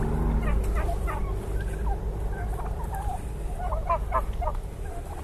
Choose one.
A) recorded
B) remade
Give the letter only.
A